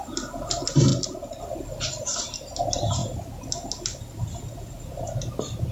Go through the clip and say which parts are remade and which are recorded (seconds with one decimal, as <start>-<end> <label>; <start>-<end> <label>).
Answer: 0.0-5.7 recorded